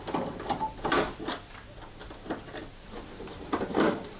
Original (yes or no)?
yes